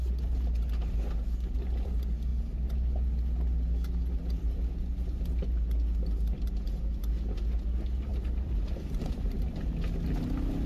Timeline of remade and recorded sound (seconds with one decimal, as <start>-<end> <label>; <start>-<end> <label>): 0.0-8.1 recorded; 8.1-9.5 remade; 9.5-10.7 recorded